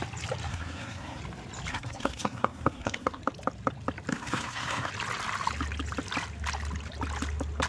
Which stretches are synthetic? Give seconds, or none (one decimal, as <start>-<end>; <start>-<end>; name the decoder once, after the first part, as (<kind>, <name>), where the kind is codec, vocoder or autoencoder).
0.5-1.2 (codec, SNAC); 1.7-3.2; 4.1-4.9